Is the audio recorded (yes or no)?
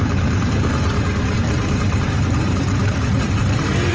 no